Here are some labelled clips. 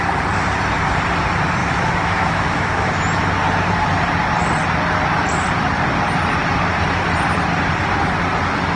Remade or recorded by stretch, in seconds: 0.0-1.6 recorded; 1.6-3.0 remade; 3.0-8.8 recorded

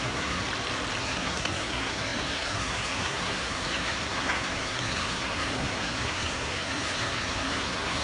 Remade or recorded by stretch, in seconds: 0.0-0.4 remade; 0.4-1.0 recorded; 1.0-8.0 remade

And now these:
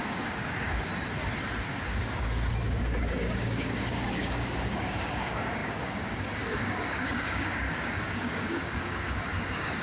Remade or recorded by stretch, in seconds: 0.0-0.9 remade; 0.9-1.7 recorded; 1.7-9.8 remade

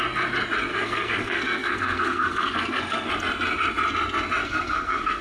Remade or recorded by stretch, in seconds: 0.0-0.7 recorded; 0.7-3.1 remade; 3.1-4.4 recorded; 4.4-5.2 remade

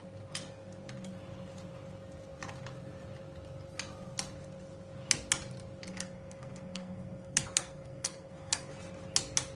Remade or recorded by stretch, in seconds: 0.0-5.9 recorded; 5.9-8.7 remade; 8.7-9.5 recorded

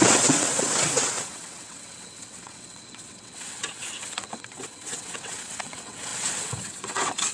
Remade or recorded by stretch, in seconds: 0.0-7.3 remade

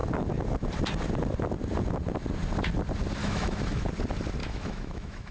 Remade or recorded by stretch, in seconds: 0.0-3.2 recorded; 3.2-3.9 remade; 3.9-4.4 recorded; 4.4-5.3 remade